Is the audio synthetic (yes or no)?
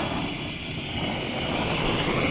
no